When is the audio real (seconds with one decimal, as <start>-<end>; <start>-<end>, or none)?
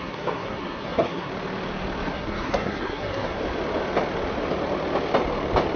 1.3-2.1; 3.4-5.8